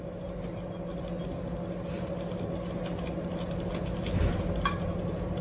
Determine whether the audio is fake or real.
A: real